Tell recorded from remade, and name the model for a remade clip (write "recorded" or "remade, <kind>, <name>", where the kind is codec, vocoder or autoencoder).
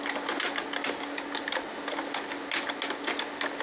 recorded